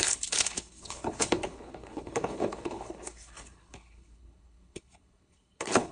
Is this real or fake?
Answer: fake